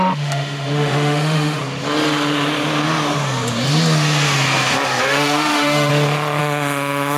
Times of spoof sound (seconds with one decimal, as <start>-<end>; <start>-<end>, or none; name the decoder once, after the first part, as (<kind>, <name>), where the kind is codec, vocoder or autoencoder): 0.0-1.6 (autoencoder, DAC-VAE); 5.0-5.9; 6.4-7.2